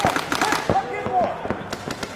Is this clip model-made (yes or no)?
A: no